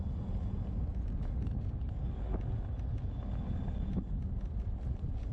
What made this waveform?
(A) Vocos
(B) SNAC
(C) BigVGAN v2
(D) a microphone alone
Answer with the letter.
D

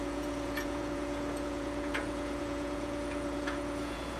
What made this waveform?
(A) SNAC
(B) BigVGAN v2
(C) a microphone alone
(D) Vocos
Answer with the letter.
D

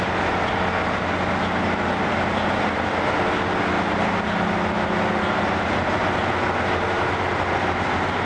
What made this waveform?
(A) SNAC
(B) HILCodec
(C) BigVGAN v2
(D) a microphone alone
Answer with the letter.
D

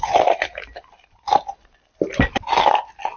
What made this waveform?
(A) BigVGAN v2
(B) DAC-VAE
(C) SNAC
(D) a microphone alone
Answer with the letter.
D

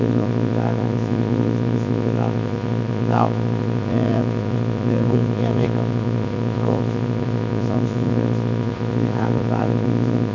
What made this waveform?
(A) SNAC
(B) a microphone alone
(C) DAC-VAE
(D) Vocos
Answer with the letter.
D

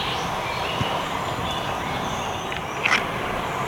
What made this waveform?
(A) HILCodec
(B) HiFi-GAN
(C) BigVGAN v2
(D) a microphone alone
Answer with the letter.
D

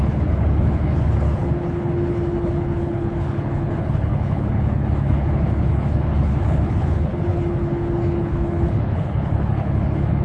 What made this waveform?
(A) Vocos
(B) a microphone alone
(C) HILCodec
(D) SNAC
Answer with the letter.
C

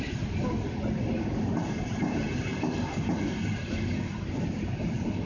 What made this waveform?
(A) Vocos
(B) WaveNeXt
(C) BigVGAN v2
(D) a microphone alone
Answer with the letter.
D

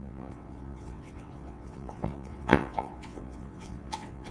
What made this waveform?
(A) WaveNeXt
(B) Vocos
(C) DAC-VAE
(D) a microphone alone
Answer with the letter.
A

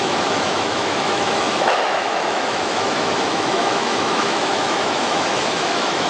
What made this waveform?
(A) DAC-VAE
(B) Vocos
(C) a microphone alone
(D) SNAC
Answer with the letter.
A